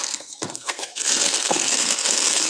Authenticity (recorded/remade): remade